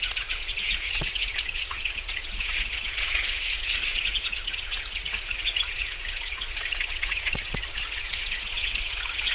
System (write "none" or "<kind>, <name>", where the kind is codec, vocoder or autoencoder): vocoder, Vocos